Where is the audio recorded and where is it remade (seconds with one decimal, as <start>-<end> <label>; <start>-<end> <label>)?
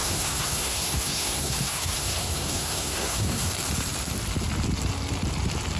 0.0-3.5 remade; 3.5-5.8 recorded